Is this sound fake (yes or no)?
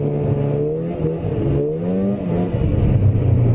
no